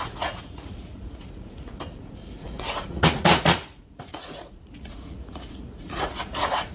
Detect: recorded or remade remade